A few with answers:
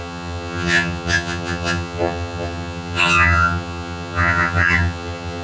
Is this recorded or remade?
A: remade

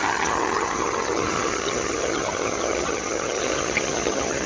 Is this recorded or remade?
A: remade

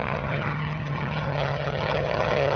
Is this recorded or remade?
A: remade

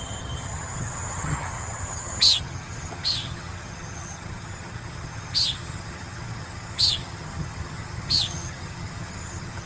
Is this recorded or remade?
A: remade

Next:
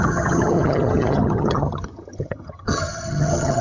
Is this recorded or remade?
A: remade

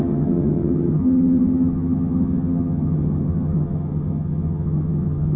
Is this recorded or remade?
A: remade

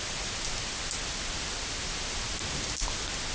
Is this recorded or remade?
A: recorded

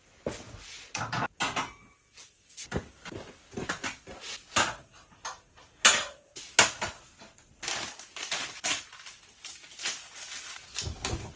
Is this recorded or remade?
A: recorded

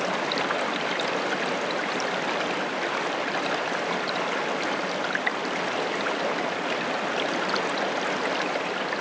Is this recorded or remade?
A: recorded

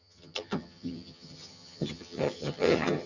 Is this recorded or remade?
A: remade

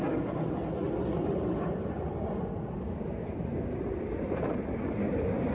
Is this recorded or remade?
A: recorded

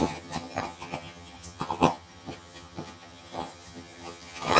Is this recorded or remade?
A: remade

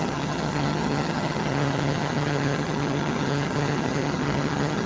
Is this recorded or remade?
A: remade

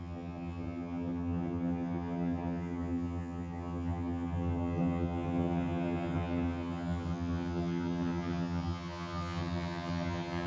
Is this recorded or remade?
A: remade